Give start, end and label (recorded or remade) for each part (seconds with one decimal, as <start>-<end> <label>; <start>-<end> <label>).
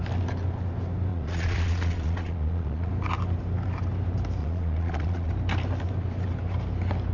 0.0-1.1 recorded; 1.1-2.9 remade; 2.9-4.4 recorded; 4.4-5.3 remade; 5.3-7.1 recorded